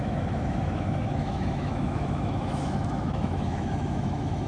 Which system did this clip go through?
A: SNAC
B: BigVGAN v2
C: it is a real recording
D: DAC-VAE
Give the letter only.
D